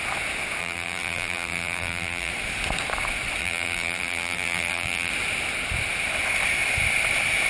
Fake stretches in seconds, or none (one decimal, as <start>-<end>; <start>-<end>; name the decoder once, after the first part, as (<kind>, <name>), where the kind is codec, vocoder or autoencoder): 0.6-2.3 (vocoder, BigVGAN v2); 3.4-5.1